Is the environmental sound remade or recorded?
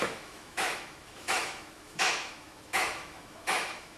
remade